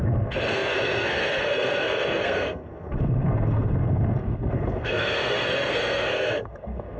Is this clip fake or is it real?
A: fake